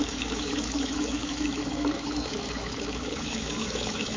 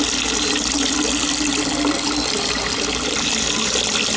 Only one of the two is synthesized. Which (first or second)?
first